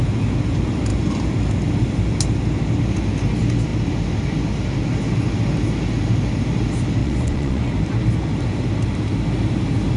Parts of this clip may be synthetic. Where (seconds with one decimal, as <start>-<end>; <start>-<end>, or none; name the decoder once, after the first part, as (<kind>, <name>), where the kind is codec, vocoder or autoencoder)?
7.0-7.7 (vocoder, Vocos)